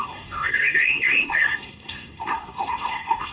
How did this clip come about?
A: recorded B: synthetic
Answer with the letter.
B